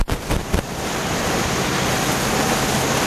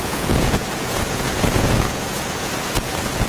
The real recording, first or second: first